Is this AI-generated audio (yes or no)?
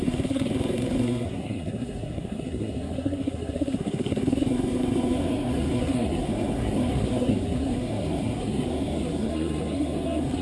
yes